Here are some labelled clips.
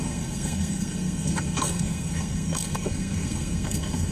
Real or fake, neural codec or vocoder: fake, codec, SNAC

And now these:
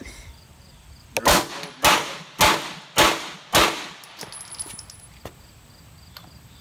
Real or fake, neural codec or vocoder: real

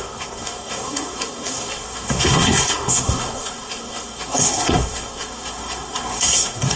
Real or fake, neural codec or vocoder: fake, codec, SNAC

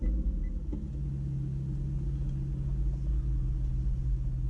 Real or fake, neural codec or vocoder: real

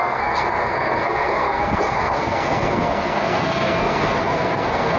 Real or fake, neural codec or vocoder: fake, codec, SNAC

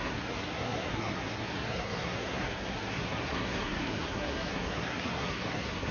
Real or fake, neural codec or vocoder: fake, codec, SNAC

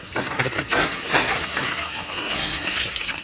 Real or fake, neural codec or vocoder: fake, codec, SNAC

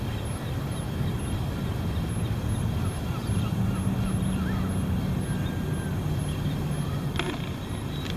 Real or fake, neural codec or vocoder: real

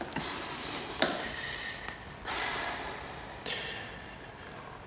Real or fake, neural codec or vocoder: real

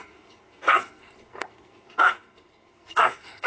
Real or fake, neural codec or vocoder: fake, codec, SNAC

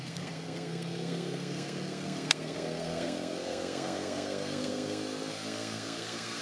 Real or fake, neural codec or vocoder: fake, codec, SNAC